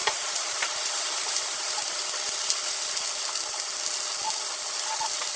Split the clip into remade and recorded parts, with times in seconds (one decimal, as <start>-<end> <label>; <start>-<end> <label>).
0.0-2.0 remade; 2.0-5.4 recorded